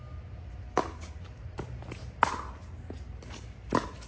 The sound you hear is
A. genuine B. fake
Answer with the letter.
A